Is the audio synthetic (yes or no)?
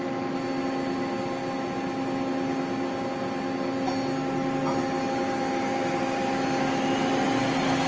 no